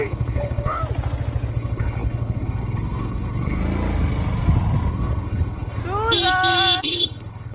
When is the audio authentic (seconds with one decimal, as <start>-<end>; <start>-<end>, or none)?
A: 0.8-1.5; 3.6-4.9; 5.8-6.8